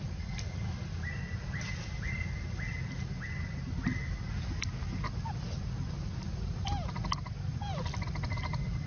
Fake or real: real